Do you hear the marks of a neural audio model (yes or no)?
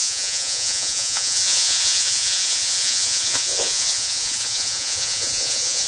yes